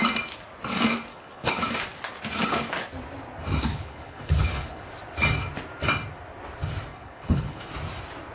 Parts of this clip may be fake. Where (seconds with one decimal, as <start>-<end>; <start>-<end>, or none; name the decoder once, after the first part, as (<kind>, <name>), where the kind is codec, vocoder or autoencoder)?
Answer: 1.1-1.6 (codec, HILCodec); 3.7-4.9; 6.9-7.7